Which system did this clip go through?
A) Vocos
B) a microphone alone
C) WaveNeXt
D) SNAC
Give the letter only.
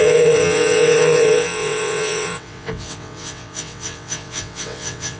C